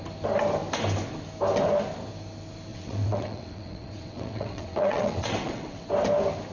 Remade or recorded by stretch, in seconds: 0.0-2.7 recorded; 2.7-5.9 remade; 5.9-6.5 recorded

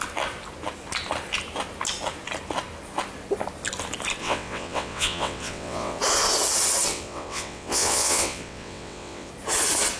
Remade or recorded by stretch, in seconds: 0.0-4.2 recorded; 4.2-6.0 remade; 6.0-6.9 recorded; 6.9-9.3 remade; 9.3-10.0 recorded

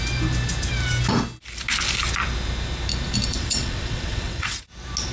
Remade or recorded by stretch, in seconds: 0.0-3.4 recorded; 3.4-4.6 remade; 4.6-5.1 recorded

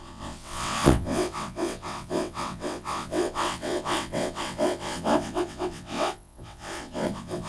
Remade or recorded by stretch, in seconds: 0.0-7.5 remade

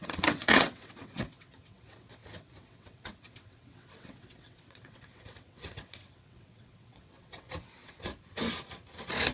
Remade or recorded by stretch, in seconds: 0.0-8.1 remade; 8.1-9.3 recorded